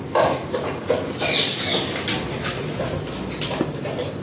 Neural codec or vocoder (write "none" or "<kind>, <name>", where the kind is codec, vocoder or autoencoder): none